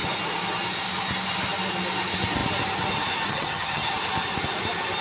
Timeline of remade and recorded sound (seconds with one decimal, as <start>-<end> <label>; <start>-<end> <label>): 0.0-3.3 recorded; 3.3-3.9 remade; 3.9-5.0 recorded